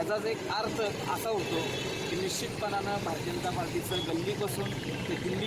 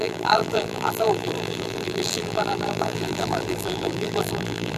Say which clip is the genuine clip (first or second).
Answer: first